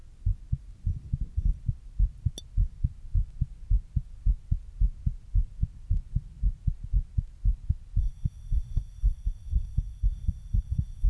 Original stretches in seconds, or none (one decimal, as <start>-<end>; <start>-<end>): 0.0-8.0